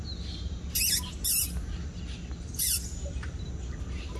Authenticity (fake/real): real